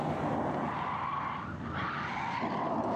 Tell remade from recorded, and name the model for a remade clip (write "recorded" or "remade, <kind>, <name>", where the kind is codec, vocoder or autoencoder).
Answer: recorded